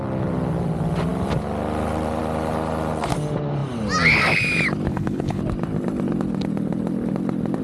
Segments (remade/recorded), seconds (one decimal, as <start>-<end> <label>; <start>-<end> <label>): 0.0-4.9 recorded; 4.9-5.4 remade; 5.4-7.6 recorded